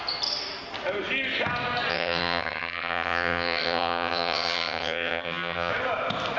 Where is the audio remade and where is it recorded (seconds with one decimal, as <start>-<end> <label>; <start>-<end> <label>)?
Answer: 0.0-1.9 recorded; 1.9-5.7 remade; 5.7-6.4 recorded